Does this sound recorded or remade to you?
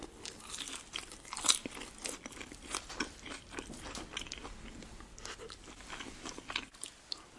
recorded